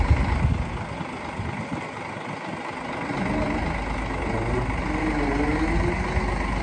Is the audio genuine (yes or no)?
yes